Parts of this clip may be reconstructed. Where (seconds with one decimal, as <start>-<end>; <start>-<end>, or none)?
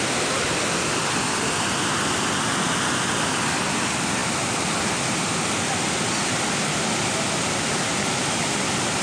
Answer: none